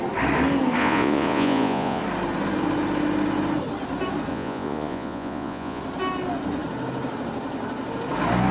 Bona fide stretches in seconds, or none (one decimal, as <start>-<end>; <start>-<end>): 0.0-0.8; 2.0-4.3; 5.8-8.5